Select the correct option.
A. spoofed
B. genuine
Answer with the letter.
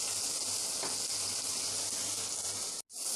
B